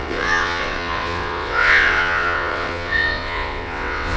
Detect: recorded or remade remade